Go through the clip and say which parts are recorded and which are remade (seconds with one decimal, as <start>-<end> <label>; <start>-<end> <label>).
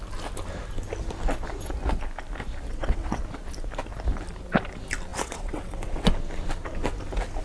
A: 0.0-2.7 recorded; 2.7-3.2 remade; 3.2-5.1 recorded; 5.1-6.1 remade; 6.1-7.4 recorded